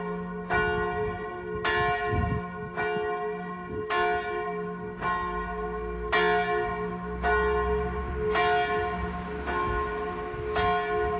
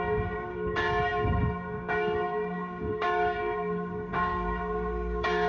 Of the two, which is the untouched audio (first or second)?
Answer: first